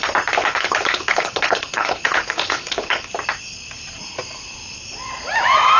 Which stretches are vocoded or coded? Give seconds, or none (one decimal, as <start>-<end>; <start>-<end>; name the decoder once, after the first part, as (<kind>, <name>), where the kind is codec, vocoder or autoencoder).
0.4-3.1 (codec, HILCodec)